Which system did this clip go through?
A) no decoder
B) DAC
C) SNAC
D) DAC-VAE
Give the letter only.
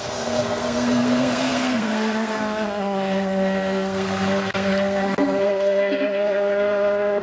C